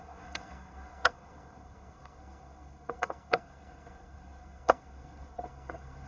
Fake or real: fake